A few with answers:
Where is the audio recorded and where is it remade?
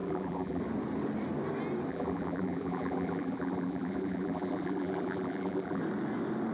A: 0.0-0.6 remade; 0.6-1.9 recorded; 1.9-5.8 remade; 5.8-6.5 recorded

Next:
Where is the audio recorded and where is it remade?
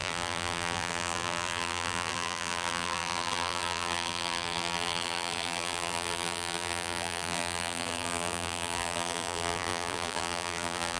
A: 0.0-11.0 remade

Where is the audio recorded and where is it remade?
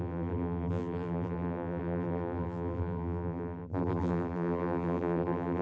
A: 0.0-5.6 remade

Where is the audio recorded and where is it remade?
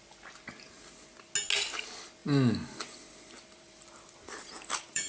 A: 0.0-2.2 recorded; 2.2-5.1 remade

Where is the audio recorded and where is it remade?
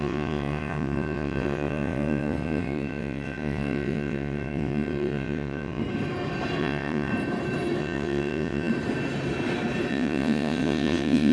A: 0.0-5.8 remade; 5.8-6.6 recorded; 6.6-7.1 remade; 7.1-7.8 recorded; 7.8-8.7 remade; 8.7-9.9 recorded; 9.9-11.3 remade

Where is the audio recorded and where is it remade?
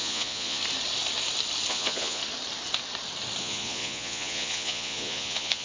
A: 0.0-0.6 remade; 0.6-1.7 recorded; 1.7-2.2 remade; 2.2-3.4 recorded; 3.4-5.6 remade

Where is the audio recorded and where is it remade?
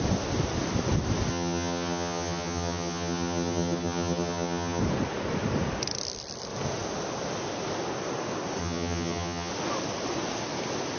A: 0.0-1.3 recorded; 1.3-4.8 remade; 4.8-8.6 recorded; 8.6-9.5 remade; 9.5-11.0 recorded